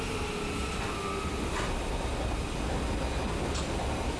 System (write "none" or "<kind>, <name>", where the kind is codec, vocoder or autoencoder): none